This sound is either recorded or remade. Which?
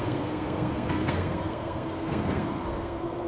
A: remade